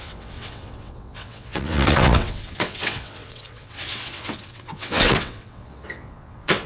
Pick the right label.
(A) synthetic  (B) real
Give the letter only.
A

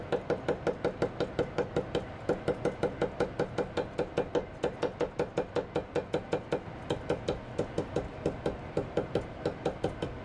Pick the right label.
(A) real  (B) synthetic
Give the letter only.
A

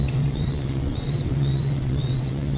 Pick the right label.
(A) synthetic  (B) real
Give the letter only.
A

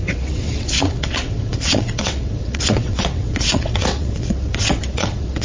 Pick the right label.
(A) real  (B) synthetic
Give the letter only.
B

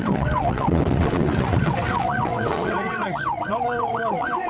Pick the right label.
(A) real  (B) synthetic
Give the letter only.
B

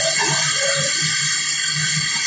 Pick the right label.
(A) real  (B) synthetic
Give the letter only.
A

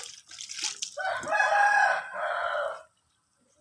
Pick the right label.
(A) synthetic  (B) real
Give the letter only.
B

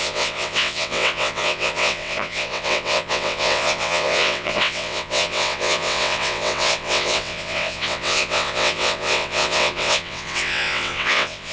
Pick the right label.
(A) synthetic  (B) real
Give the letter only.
A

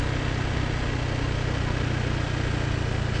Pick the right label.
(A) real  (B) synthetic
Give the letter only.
A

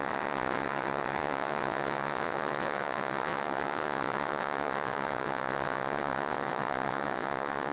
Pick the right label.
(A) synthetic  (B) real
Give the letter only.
A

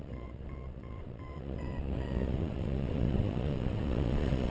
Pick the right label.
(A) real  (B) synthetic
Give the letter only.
B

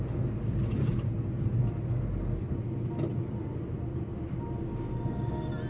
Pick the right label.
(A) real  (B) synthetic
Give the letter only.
A